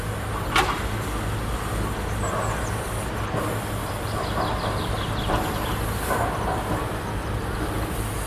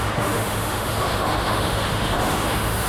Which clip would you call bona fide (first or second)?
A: first